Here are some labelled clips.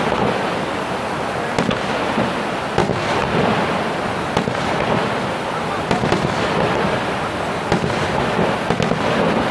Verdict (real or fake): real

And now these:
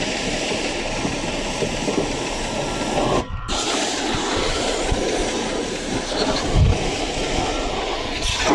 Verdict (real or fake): real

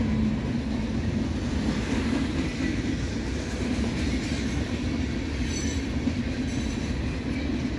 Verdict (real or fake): real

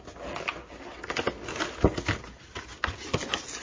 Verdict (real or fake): real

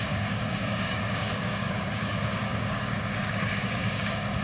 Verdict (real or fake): fake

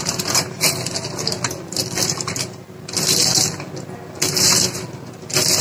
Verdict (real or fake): real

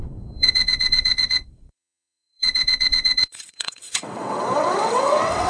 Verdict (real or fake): fake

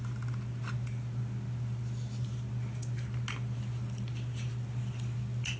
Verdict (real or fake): real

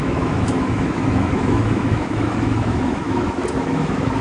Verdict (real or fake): fake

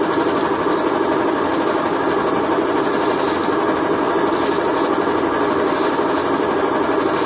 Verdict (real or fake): real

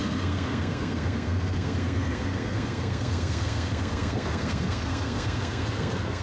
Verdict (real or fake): fake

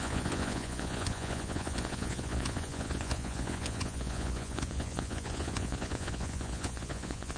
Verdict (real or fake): fake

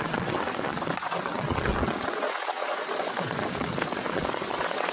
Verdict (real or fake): fake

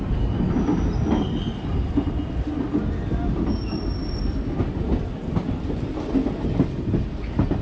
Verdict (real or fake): real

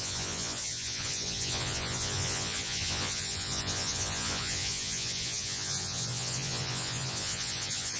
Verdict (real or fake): fake